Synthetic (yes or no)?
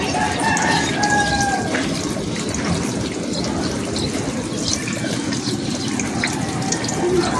no